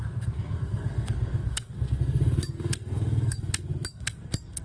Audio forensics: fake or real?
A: fake